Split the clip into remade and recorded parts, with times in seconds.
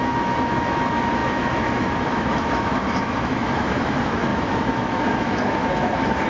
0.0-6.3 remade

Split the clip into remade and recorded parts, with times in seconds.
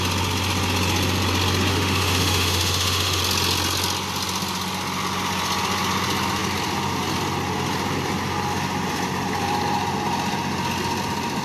0.0-1.7 recorded; 1.7-3.2 remade; 3.2-11.4 recorded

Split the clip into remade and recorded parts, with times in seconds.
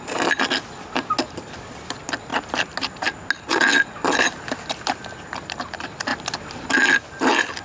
0.0-7.6 recorded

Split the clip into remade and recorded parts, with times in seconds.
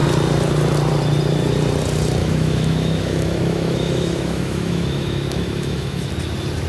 0.0-2.2 recorded; 2.2-6.1 remade; 6.1-6.7 recorded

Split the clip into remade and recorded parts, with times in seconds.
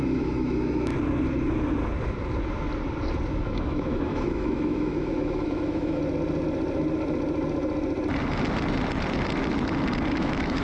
0.0-0.9 remade; 0.9-3.3 recorded; 3.3-6.0 remade; 6.0-10.1 recorded; 10.1-10.6 remade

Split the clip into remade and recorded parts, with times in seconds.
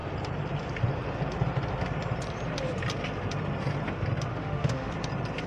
0.0-4.3 recorded; 4.3-4.9 remade; 4.9-5.5 recorded